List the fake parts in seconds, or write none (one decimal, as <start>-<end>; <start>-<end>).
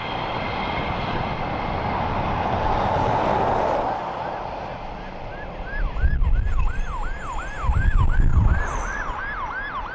8.3-9.2